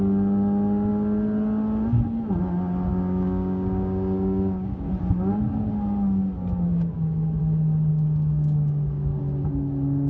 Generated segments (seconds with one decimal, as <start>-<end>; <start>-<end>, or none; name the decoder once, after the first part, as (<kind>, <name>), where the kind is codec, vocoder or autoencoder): 2.9-4.9 (codec, DAC); 6.7-7.4; 7.9-9.2